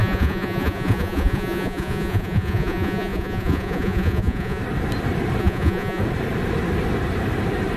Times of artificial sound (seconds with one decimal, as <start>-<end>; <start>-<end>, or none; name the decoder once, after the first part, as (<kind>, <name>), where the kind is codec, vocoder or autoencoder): 0.0-4.6 (vocoder, Vocos); 5.4-6.0